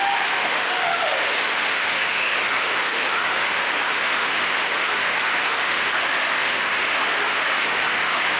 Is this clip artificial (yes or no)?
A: yes